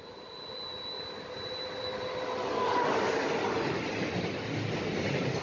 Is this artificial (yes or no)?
no